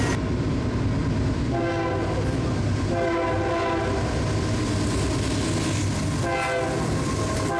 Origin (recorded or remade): recorded